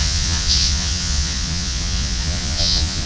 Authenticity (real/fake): fake